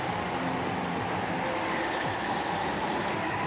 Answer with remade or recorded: recorded